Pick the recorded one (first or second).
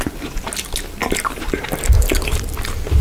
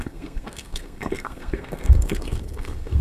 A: first